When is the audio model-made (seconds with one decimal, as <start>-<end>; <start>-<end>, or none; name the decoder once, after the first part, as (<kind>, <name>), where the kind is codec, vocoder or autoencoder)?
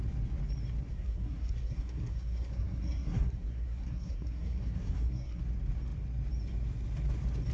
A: 0.9-5.4 (codec, SNAC)